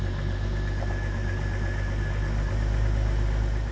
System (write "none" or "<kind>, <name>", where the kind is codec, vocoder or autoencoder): none